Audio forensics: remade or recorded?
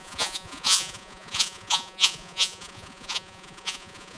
remade